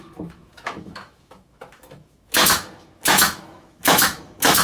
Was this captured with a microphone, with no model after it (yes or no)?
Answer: no